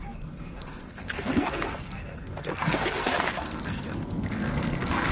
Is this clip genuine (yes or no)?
no